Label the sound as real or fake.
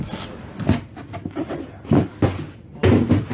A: real